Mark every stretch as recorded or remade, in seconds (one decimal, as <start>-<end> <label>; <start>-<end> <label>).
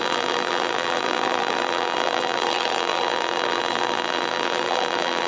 0.0-5.3 remade